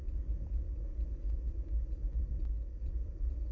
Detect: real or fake real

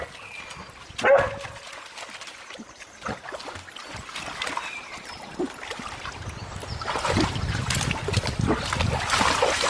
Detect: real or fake real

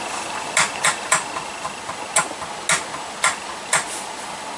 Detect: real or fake real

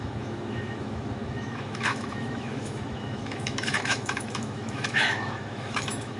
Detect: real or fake fake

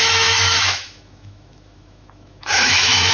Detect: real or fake fake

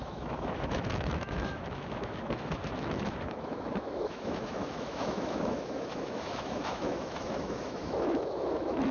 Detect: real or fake fake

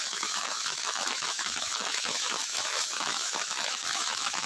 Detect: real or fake fake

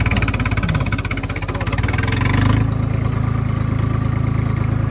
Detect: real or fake real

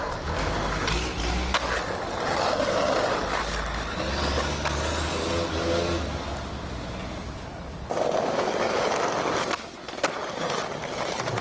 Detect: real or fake real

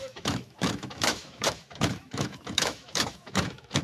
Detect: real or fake fake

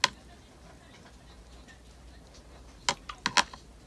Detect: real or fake real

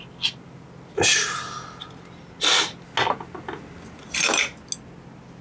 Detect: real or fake real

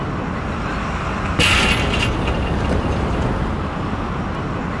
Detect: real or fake real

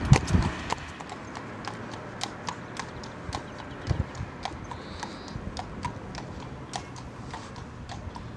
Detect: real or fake real